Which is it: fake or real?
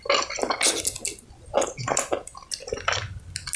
real